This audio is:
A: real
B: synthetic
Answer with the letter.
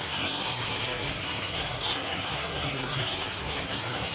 B